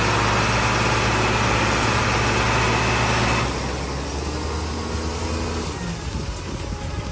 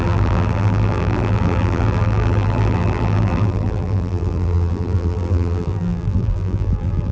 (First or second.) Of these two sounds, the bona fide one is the first